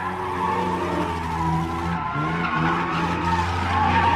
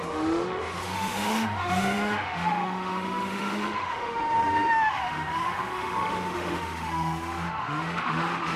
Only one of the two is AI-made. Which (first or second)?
second